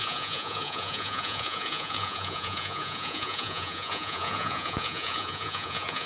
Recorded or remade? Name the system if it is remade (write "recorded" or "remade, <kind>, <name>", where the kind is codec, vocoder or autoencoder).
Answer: remade, vocoder, Vocos